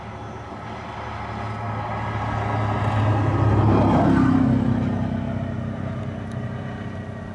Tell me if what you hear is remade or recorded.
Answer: recorded